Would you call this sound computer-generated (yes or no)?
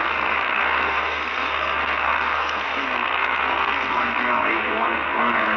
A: yes